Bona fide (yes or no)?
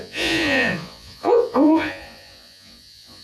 no